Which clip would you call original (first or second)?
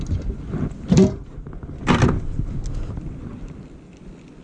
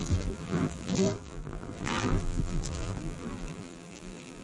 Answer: first